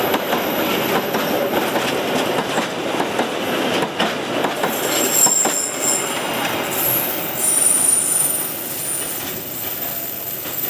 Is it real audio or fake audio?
real